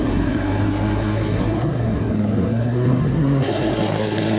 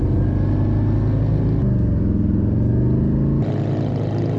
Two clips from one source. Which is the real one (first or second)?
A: second